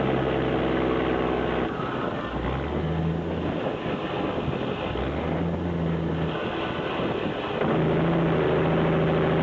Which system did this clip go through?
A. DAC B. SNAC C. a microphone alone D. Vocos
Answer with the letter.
C